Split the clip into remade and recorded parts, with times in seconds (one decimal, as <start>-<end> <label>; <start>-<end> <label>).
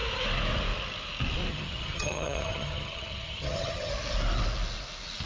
0.0-1.5 recorded; 1.5-3.9 remade; 3.9-5.3 recorded